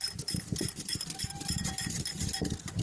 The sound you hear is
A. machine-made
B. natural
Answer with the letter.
B